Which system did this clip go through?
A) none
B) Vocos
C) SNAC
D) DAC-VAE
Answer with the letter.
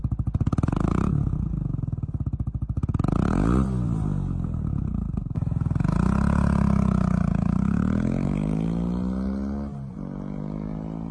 A